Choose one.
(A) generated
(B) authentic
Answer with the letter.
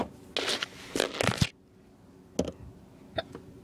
B